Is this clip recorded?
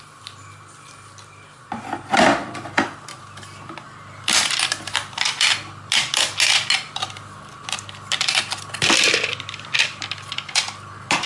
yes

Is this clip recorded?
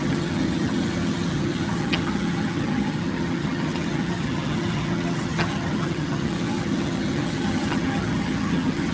no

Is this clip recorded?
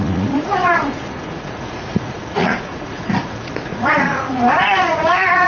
no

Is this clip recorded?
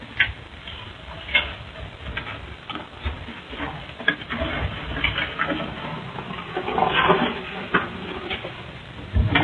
no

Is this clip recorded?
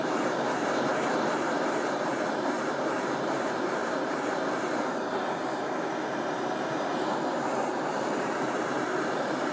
no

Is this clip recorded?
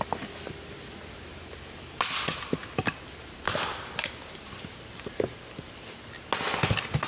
yes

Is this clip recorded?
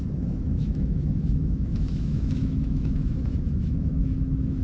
no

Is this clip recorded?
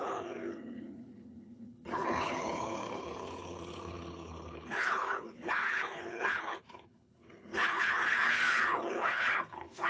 no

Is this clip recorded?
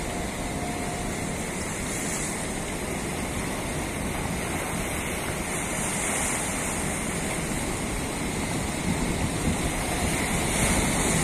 yes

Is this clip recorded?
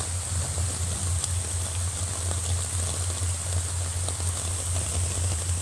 yes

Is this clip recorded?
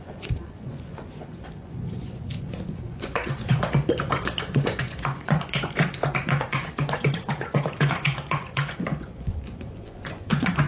no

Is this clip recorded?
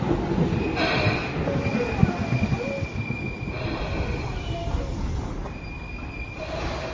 yes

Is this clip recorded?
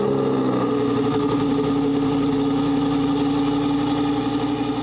yes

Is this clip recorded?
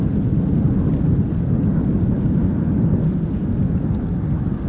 yes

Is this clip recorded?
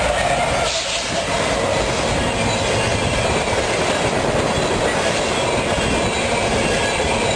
yes